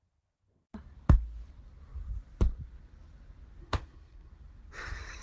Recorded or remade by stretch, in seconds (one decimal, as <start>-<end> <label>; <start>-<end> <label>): 0.0-3.6 recorded; 3.6-4.3 remade; 4.3-5.2 recorded